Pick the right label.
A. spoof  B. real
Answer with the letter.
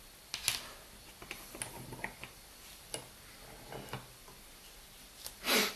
B